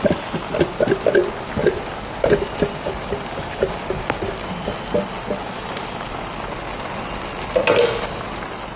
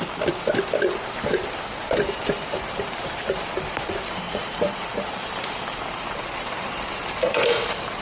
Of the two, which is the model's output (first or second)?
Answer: second